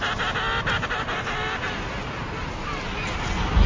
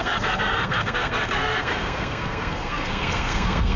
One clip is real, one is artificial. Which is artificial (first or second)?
second